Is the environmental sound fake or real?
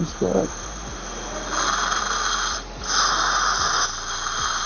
real